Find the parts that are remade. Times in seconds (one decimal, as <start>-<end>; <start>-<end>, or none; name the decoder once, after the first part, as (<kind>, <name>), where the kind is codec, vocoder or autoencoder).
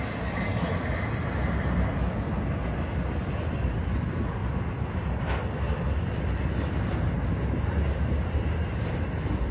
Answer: none